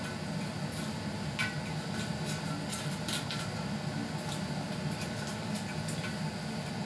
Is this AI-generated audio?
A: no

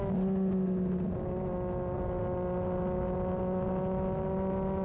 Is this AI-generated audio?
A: no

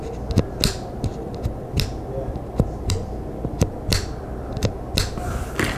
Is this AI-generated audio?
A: no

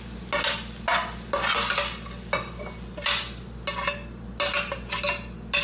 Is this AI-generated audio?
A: no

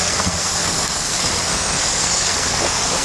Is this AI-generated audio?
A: yes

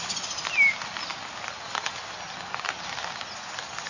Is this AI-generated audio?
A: no